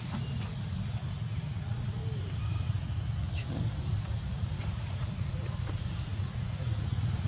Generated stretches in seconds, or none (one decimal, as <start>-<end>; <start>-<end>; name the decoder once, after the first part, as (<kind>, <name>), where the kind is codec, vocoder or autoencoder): 0.0-1.0 (vocoder, Vocos); 1.6-2.0; 4.0-7.3